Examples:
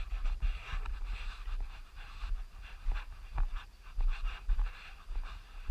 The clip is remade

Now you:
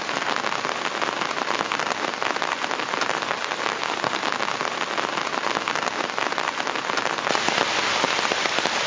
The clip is recorded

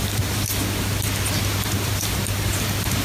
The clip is recorded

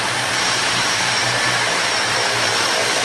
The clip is remade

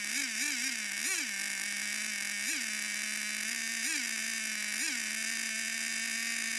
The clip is recorded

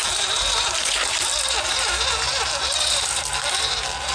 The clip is recorded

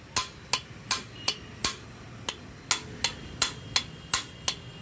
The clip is recorded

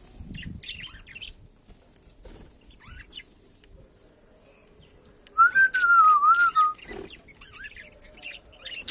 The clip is recorded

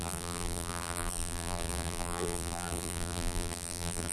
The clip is remade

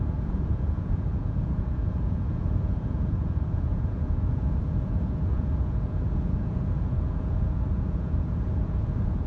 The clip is remade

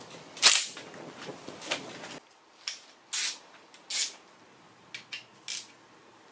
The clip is recorded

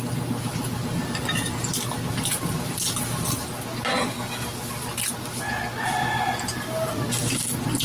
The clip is recorded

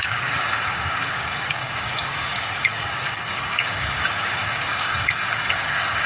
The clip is remade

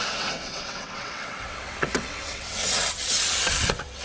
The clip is remade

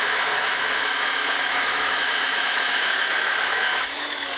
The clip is remade